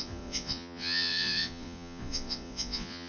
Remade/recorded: remade